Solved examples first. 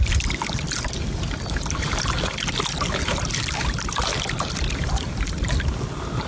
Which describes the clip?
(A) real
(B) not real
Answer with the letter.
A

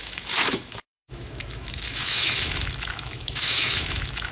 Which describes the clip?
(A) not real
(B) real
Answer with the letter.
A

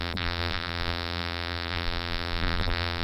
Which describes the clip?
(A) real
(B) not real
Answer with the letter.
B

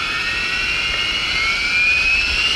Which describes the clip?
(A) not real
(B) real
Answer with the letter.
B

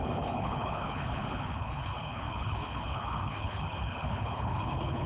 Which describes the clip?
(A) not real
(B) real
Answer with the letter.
A